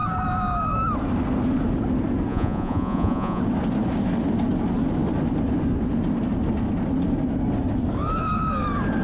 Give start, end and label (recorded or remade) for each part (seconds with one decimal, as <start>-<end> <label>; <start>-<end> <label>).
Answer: 0.0-2.3 recorded; 2.3-3.4 remade; 3.4-9.0 recorded